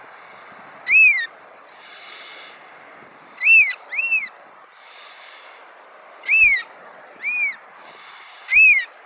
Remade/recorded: recorded